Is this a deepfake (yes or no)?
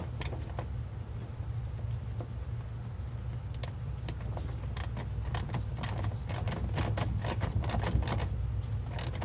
no